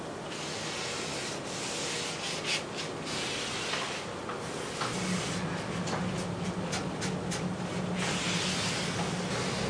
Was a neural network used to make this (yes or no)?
no